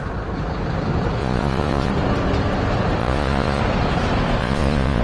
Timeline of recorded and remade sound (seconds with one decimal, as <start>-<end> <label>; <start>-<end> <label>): 0.0-1.2 recorded; 1.2-1.9 remade; 1.9-3.0 recorded; 3.0-3.6 remade; 3.6-4.4 recorded; 4.4-5.0 remade